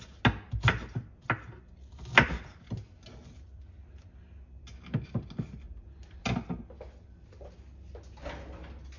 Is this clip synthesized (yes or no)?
no